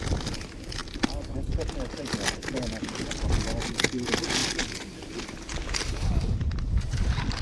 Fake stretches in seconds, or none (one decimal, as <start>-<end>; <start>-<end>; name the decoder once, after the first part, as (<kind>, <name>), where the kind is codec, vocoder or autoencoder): none